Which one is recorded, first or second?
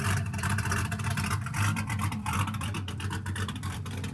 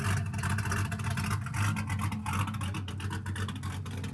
second